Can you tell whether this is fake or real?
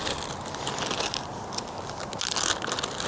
real